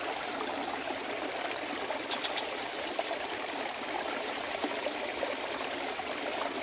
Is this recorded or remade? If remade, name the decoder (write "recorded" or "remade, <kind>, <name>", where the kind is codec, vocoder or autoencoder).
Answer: remade, vocoder, BigVGAN v2